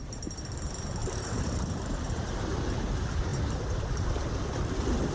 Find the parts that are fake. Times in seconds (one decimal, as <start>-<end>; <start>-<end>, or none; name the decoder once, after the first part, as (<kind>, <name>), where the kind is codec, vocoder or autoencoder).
1.0-2.4 (vocoder, BigVGAN v2)